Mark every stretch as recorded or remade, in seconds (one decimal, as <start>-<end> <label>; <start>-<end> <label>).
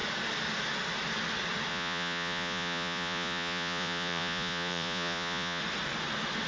0.0-1.7 recorded; 1.7-5.6 remade; 5.6-6.5 recorded